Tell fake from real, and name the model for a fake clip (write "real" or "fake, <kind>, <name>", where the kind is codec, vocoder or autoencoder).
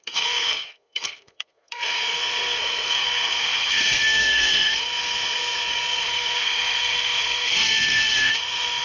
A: fake, codec, SNAC